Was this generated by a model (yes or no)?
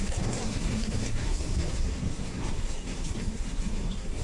yes